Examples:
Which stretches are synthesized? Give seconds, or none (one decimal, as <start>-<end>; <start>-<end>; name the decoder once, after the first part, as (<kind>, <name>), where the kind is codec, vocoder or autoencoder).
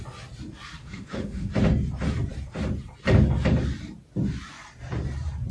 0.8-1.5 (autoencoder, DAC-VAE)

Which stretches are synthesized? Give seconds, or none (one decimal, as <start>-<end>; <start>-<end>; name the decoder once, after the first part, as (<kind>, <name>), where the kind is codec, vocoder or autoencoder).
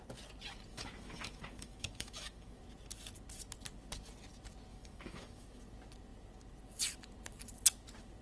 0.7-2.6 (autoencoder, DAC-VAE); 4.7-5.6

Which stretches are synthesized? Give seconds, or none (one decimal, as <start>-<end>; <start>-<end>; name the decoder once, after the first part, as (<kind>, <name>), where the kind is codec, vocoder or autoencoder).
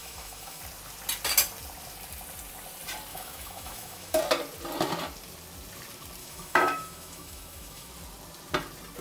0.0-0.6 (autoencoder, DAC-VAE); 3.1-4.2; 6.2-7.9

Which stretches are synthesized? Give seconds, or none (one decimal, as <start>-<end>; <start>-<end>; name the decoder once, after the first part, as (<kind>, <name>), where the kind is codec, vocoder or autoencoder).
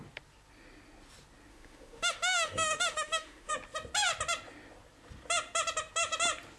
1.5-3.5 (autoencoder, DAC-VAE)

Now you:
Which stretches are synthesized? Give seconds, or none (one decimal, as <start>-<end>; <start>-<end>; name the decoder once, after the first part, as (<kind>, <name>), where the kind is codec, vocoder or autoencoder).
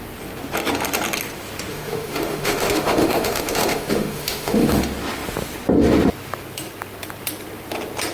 1.7-4.8 (autoencoder, DAC-VAE)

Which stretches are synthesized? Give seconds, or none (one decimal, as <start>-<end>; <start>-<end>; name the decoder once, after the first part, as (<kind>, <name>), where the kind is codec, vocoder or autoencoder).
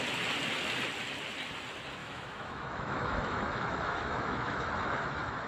2.0-5.5 (autoencoder, DAC-VAE)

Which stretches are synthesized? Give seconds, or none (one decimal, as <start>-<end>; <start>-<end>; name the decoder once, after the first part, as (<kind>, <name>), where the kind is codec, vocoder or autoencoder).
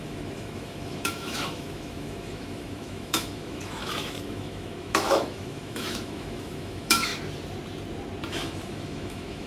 0.0-7.1 (autoencoder, DAC-VAE); 8.3-9.5